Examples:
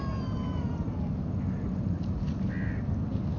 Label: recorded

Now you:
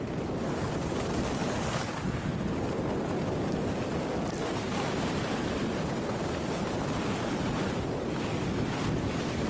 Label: recorded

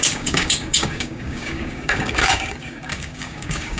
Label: remade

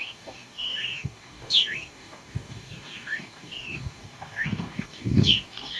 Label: remade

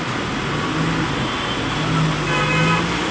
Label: recorded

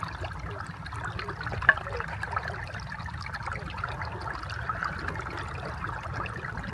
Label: recorded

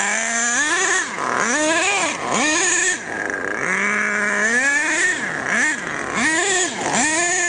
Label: recorded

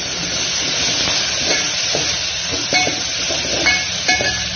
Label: recorded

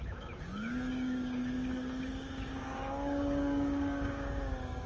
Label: remade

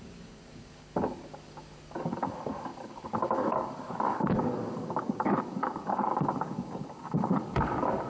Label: remade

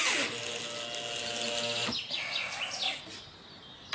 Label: recorded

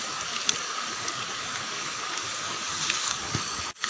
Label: remade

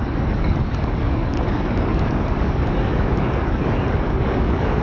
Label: remade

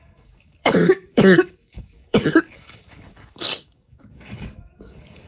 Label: remade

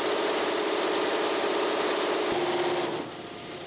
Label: recorded